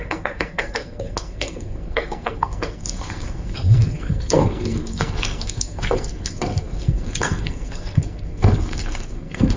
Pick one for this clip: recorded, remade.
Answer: remade